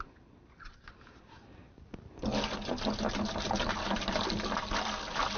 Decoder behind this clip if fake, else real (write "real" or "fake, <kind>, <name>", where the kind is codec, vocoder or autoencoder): real